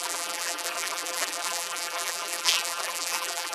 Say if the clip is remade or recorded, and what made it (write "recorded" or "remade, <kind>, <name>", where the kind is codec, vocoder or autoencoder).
remade, vocoder, BigVGAN v2